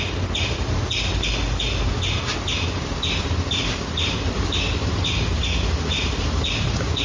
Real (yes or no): yes